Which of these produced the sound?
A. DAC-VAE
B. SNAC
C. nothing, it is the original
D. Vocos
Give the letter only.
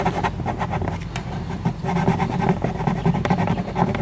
C